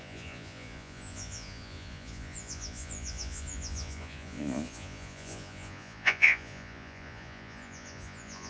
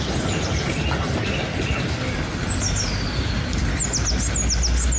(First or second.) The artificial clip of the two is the first